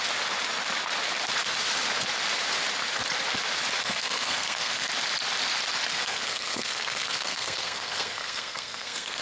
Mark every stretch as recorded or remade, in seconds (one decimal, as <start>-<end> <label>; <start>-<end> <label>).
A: 0.0-3.8 recorded; 3.8-4.9 remade; 4.9-5.9 recorded; 5.9-9.2 remade